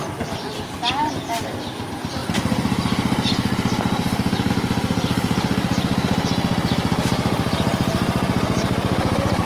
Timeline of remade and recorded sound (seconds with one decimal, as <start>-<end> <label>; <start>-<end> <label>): 0.0-9.5 recorded